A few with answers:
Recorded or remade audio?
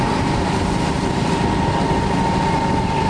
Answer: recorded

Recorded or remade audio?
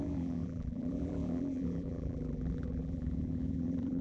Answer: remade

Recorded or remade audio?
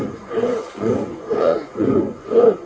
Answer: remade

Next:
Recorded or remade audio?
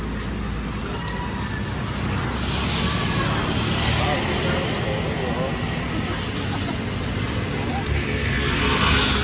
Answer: recorded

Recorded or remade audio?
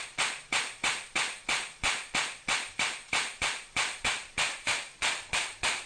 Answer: remade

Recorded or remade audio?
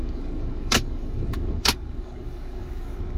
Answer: remade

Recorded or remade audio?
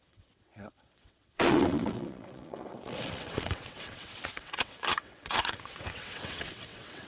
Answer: remade